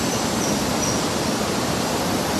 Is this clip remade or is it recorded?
recorded